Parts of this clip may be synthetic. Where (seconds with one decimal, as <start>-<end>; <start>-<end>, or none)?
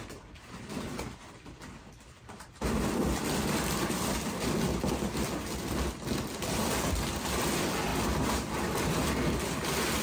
none